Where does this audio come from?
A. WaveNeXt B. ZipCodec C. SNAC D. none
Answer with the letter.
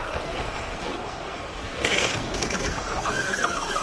C